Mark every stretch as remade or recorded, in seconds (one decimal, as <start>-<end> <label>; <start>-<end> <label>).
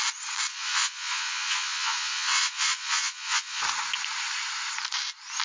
0.0-0.5 recorded; 0.5-3.6 remade; 3.6-5.4 recorded